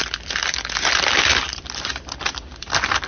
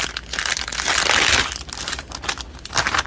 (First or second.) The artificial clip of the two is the first